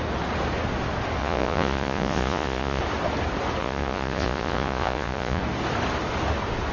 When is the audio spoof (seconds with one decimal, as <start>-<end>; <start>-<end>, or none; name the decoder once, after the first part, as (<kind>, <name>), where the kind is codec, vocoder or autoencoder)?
1.2-2.8 (vocoder, Vocos); 3.6-5.4